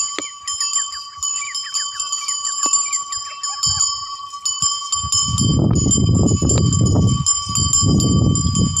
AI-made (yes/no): no